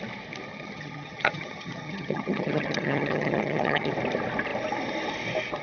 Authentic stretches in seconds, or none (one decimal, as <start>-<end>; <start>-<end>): 0.0-0.5; 3.9-5.6